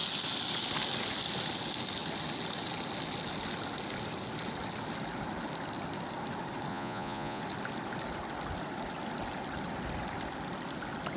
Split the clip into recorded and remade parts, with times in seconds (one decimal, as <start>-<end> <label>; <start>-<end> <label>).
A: 0.0-6.7 recorded; 6.7-7.4 remade; 7.4-11.2 recorded